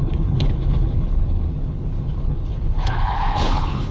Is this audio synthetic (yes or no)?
yes